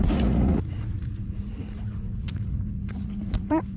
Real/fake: fake